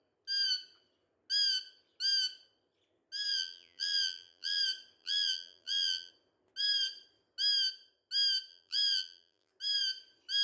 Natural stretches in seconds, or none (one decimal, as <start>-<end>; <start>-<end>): 0.0-3.3; 4.6-5.0; 6.1-8.5; 9.5-10.4